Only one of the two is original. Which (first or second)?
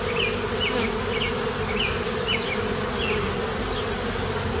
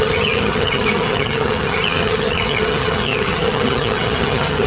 first